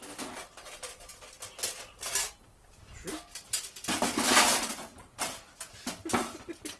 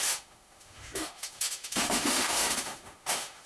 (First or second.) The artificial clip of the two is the second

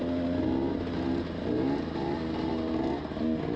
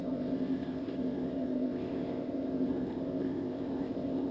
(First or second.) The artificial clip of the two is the second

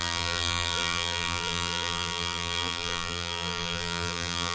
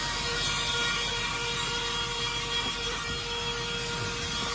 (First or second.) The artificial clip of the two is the first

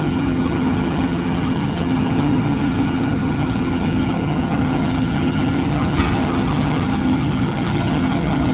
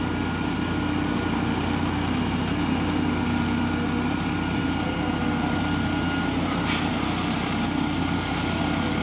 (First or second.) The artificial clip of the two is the first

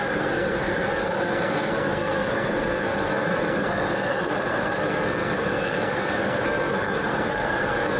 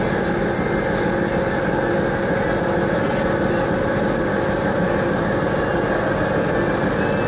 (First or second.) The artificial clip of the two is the first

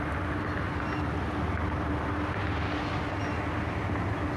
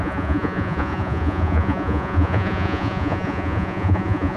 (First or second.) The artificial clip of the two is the second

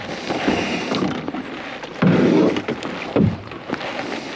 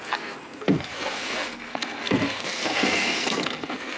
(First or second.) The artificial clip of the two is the second